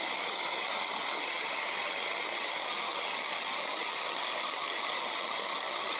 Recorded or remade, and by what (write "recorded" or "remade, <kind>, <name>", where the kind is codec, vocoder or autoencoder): remade, vocoder, HiFi-GAN